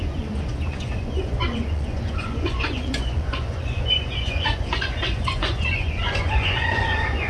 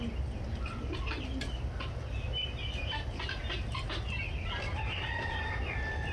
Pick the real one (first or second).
second